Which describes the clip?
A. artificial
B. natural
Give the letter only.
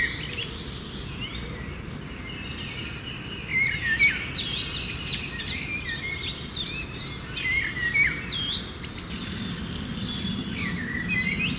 B